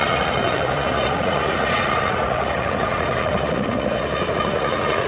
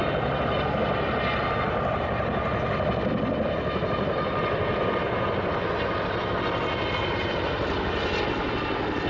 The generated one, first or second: first